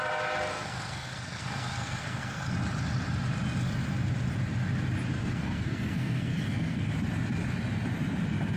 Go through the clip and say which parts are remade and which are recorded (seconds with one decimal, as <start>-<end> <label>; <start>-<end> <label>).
0.0-0.5 recorded; 0.5-2.5 remade; 2.5-5.2 recorded; 5.2-6.9 remade; 6.9-8.6 recorded